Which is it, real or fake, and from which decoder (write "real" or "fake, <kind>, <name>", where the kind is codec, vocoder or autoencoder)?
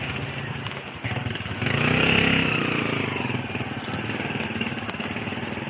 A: real